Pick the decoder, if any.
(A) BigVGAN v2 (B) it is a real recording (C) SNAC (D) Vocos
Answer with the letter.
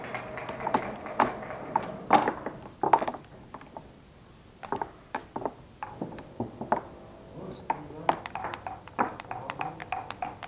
B